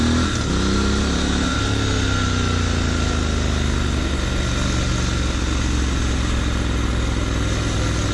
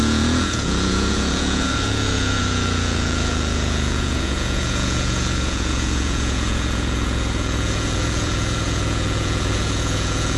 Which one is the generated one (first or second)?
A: second